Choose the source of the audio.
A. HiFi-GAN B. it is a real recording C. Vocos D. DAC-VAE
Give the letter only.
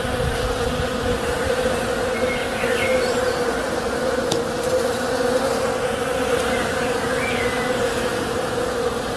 B